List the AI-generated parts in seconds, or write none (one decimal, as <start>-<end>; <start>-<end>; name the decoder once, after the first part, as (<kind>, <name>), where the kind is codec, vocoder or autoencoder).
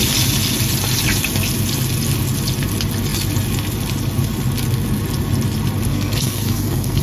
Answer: 5.9-7.0 (codec, SNAC)